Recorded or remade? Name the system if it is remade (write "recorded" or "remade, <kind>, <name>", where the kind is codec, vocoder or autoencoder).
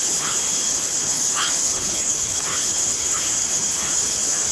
remade, codec, HILCodec